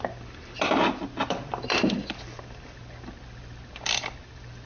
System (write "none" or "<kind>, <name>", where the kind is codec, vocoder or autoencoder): vocoder, BigVGAN v2